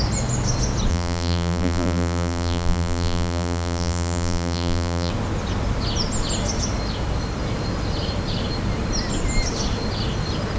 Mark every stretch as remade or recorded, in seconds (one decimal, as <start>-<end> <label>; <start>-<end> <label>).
0.0-0.9 recorded; 0.9-5.1 remade; 5.1-10.6 recorded